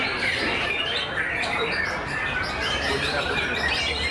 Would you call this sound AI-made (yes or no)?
yes